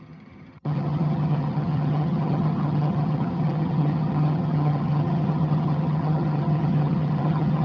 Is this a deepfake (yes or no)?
yes